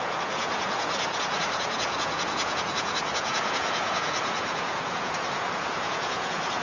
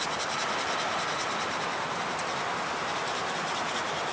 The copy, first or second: first